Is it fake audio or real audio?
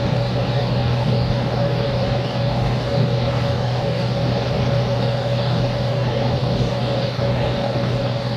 fake